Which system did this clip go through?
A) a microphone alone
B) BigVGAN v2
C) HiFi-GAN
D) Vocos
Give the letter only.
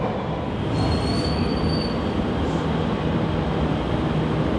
A